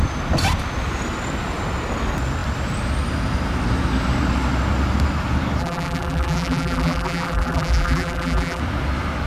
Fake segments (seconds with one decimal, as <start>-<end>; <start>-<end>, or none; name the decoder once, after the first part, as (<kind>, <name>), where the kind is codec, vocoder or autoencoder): 5.6-8.6 (vocoder, BigVGAN v2)

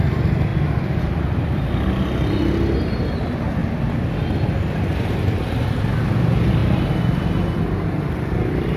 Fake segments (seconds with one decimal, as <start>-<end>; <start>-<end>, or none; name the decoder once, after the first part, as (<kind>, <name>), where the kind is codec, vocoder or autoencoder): 0.5-1.7 (vocoder, BigVGAN v2)

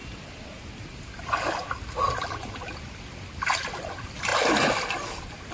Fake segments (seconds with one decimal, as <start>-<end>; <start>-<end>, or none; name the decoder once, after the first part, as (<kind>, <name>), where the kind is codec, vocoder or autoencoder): none

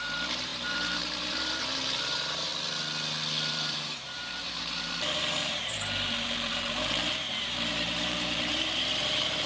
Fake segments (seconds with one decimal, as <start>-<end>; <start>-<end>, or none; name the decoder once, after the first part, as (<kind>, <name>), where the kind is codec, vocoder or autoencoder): 0.0-2.5 (vocoder, BigVGAN v2); 3.5-9.5

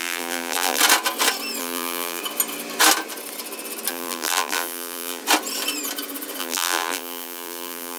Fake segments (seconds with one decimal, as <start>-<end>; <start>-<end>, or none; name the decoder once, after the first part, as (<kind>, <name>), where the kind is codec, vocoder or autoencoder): 0.0-0.8 (vocoder, BigVGAN v2); 1.6-2.2; 3.9-5.2; 6.4-8.0

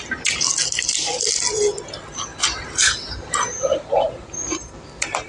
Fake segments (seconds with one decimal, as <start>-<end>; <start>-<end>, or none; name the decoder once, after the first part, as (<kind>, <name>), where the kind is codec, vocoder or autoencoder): 2.3-5.3 (vocoder, BigVGAN v2)

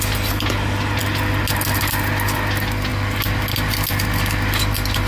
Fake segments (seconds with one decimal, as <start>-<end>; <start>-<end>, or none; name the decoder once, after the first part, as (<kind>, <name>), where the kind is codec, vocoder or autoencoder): none

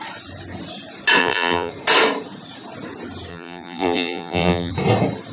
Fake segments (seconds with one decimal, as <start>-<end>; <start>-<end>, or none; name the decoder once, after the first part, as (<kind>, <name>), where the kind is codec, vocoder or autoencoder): 1.2-1.7 (vocoder, BigVGAN v2); 3.3-4.7